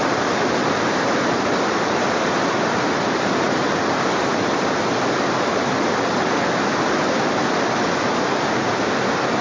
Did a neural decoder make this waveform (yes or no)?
no